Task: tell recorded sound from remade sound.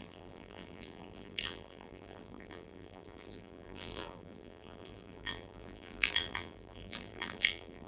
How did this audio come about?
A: remade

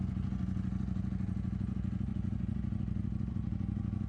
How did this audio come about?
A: recorded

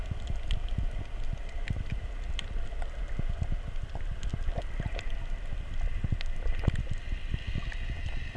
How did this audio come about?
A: recorded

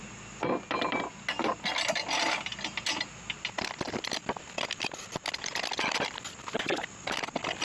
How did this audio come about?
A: recorded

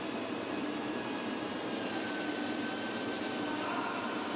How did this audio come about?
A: recorded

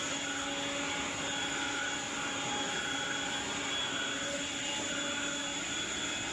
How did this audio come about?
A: recorded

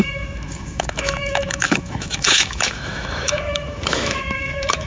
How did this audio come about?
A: remade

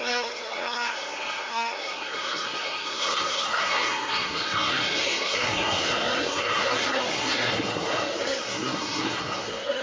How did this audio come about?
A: remade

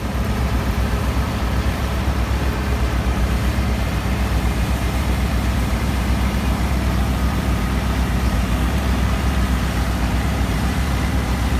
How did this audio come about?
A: remade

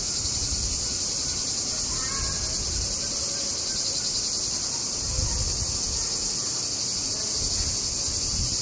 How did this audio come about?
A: recorded